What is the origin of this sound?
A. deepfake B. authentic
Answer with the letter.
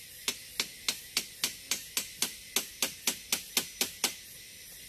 B